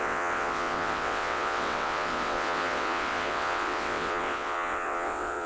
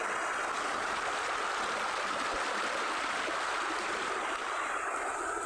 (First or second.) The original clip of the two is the second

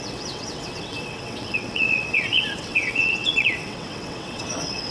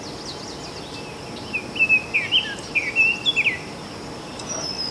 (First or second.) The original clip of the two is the second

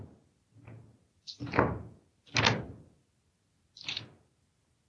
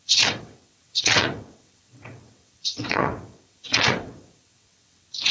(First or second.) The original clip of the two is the first